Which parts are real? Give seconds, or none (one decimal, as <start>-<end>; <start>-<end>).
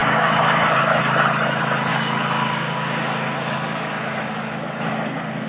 1.0-1.9